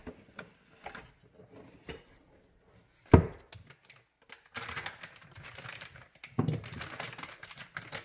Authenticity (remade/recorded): recorded